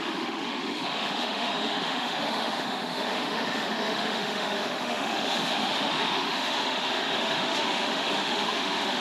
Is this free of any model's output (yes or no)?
no